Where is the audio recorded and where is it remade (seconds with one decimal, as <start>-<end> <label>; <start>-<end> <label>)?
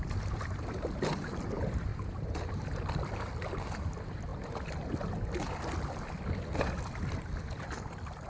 0.0-1.9 recorded; 1.9-3.3 remade; 3.3-8.3 recorded